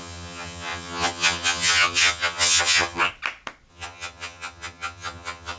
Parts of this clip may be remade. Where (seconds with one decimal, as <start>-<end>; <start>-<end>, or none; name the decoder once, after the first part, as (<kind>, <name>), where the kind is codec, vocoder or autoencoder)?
0.0-3.1 (vocoder, HiFi-GAN); 3.7-5.6